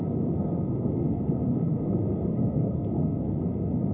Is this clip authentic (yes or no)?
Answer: no